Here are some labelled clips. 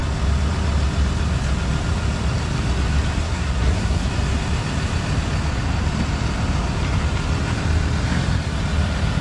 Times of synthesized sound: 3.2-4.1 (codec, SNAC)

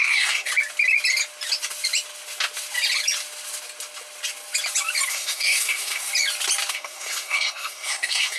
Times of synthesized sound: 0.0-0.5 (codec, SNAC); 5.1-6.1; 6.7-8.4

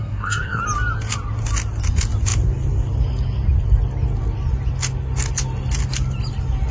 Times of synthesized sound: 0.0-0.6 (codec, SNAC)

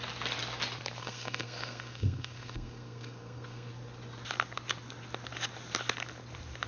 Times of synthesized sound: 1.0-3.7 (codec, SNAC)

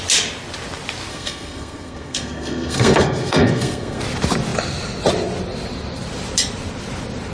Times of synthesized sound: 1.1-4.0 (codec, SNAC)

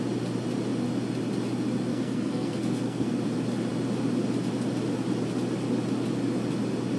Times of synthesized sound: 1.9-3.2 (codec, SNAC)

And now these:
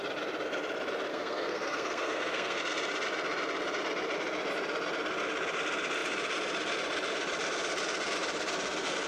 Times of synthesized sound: 1.1-2.6 (codec, SNAC)